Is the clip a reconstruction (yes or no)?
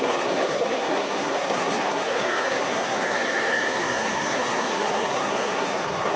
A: yes